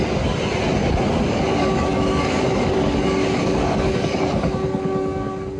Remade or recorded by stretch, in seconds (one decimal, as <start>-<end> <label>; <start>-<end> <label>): 0.0-1.3 recorded; 1.3-5.6 remade